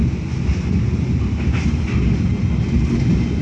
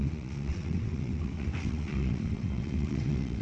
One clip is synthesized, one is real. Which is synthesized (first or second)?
second